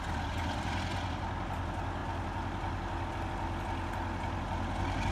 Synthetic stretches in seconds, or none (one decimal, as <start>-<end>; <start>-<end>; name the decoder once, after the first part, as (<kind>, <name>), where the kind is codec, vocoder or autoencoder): none